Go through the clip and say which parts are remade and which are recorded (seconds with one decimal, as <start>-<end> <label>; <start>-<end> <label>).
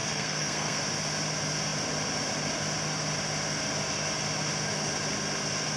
0.0-0.8 remade; 0.8-5.8 recorded